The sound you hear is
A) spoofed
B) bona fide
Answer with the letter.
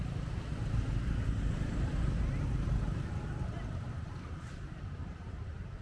A